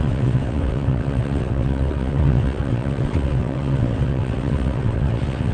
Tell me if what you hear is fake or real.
fake